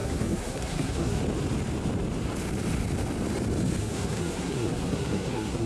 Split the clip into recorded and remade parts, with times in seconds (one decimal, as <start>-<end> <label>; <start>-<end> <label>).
0.0-1.2 remade; 1.2-3.8 recorded; 3.8-5.7 remade